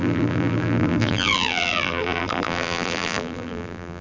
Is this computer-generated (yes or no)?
yes